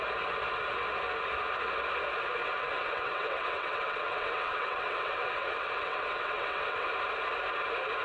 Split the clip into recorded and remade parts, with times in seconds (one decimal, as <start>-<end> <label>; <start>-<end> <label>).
0.0-2.4 recorded; 2.4-6.9 remade; 6.9-8.0 recorded